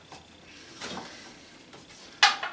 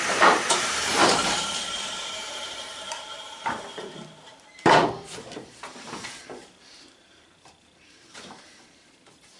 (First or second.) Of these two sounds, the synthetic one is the second